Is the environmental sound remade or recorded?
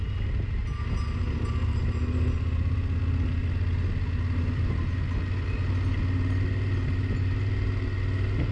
recorded